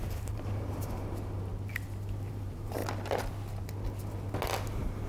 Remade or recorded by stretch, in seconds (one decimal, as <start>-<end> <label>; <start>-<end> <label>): 0.0-1.5 remade; 1.5-2.3 recorded; 2.3-2.8 remade; 2.8-5.1 recorded